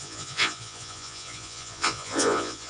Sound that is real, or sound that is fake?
fake